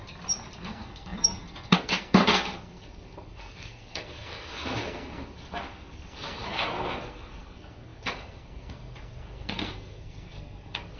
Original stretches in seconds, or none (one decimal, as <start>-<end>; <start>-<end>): 0.0-0.6